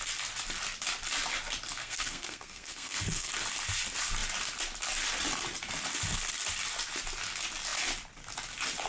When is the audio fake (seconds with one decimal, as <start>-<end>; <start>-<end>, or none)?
1.8-3.3